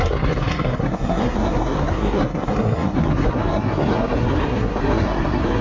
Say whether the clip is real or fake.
fake